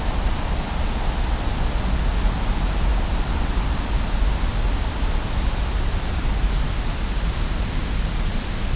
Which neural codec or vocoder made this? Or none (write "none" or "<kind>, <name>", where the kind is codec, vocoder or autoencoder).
none